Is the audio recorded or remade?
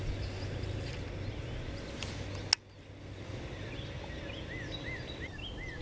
recorded